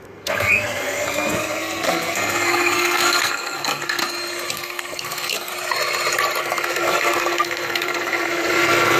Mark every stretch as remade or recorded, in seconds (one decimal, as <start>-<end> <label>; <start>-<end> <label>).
0.0-4.0 remade; 4.0-4.5 recorded; 4.5-5.5 remade; 5.5-6.4 recorded; 6.4-9.0 remade